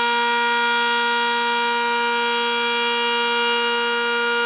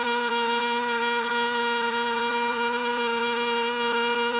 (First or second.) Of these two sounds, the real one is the first